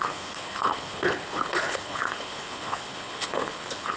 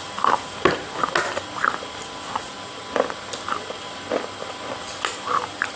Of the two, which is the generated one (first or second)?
first